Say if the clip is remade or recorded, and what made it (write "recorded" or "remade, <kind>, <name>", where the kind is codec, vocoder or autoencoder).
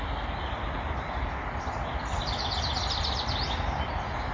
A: recorded